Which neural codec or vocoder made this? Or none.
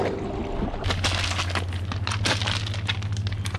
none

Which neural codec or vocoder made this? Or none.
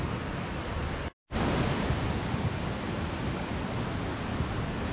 none